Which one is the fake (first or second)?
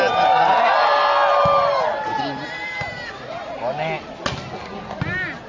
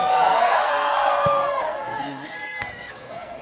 second